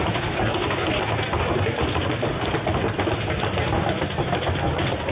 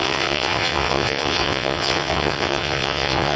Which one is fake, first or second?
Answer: second